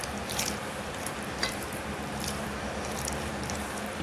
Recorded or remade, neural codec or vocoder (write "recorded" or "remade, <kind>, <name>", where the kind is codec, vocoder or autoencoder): remade, vocoder, BigVGAN v2